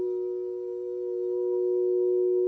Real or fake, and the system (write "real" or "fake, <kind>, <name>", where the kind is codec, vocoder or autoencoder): real